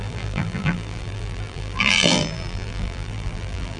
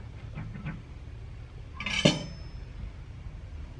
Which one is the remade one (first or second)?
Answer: first